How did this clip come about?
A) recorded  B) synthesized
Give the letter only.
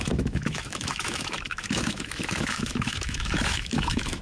B